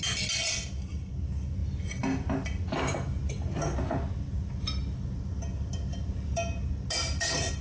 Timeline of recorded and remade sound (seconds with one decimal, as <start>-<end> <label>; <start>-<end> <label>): 0.0-7.6 recorded